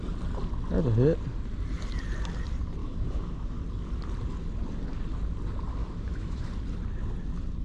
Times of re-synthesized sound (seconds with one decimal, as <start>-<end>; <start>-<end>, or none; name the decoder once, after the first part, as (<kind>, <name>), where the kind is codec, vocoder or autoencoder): 2.8-3.6 (autoencoder, DAC-VAE); 5.8-6.5